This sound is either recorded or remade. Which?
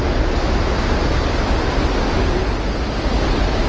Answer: recorded